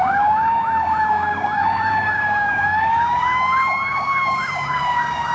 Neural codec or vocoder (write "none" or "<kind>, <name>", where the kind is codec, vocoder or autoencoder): codec, DAC